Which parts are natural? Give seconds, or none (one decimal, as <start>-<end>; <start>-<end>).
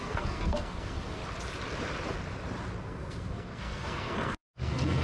1.2-2.8